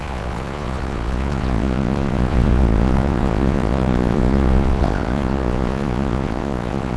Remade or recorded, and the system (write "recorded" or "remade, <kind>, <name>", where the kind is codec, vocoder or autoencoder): remade, vocoder, Vocos